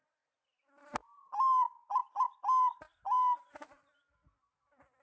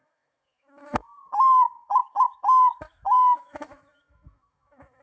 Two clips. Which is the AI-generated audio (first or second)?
second